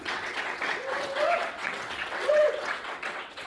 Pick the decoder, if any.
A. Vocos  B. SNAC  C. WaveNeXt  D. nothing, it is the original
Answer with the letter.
C